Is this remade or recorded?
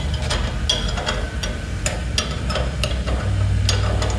recorded